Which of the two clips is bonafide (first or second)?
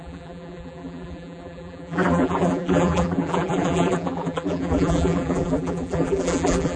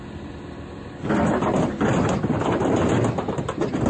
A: second